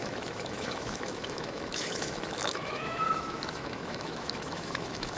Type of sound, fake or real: fake